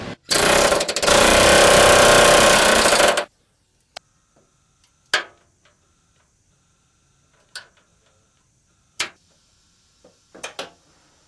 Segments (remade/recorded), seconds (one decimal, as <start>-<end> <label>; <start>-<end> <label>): 0.0-7.9 recorded; 7.9-9.1 remade; 9.1-11.3 recorded